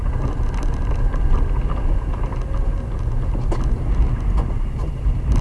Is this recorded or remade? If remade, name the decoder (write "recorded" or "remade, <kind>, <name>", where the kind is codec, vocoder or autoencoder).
recorded